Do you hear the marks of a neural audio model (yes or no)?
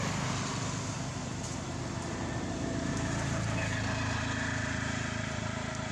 no